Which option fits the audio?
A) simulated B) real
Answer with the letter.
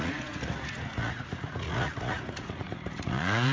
A